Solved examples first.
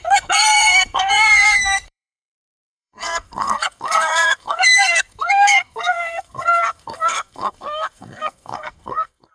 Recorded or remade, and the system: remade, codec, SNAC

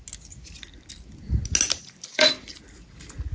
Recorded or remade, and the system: recorded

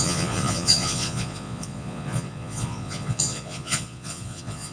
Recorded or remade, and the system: remade, vocoder, Vocos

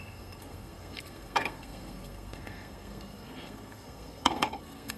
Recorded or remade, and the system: remade, codec, SNAC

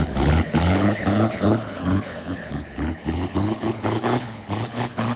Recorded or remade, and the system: remade, codec, HILCodec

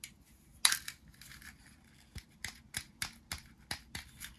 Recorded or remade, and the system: recorded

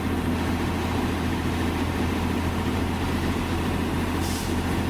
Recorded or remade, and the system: recorded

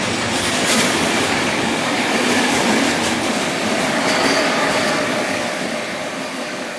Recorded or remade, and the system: remade, codec, DAC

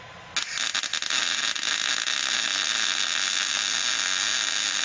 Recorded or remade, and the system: recorded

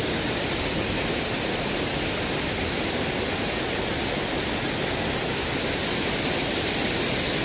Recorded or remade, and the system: recorded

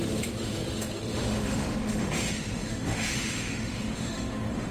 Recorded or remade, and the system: remade, autoencoder, DAC-VAE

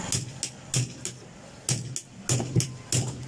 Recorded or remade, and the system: recorded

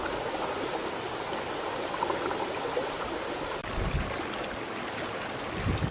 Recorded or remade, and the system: recorded